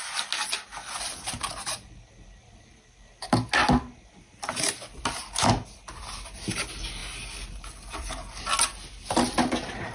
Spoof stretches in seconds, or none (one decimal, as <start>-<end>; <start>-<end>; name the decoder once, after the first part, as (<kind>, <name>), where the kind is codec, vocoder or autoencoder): none